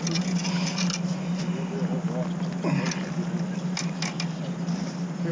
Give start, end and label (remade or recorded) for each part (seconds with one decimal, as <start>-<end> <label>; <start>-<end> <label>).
0.0-5.3 recorded